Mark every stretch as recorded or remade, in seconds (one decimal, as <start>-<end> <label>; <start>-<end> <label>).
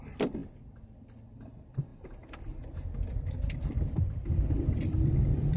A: 0.0-0.4 remade; 0.4-1.2 recorded; 1.2-5.6 remade